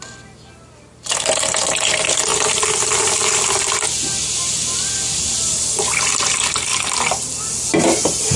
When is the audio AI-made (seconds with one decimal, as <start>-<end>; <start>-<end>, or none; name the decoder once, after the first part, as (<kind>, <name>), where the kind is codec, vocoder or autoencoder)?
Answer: none